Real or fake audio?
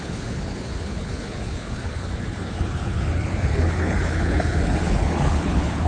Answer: fake